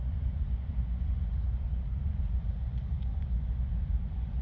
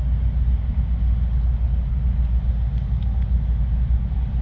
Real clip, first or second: second